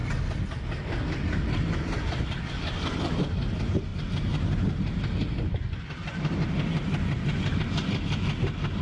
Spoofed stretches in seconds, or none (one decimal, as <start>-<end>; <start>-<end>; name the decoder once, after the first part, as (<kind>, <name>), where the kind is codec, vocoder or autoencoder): none